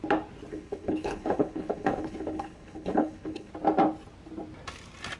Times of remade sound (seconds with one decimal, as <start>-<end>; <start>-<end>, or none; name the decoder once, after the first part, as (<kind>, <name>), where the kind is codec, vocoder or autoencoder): 0.5-3.5 (codec, HILCodec)